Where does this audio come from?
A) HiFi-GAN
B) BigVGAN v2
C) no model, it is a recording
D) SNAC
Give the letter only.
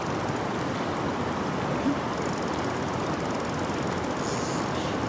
C